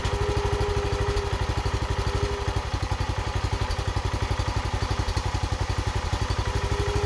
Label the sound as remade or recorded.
recorded